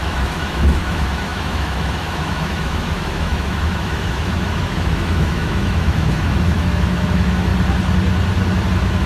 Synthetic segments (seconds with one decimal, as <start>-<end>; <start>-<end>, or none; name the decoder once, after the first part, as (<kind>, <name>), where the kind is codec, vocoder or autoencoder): 0.0-7.5 (autoencoder, DAC-VAE); 8.7-9.1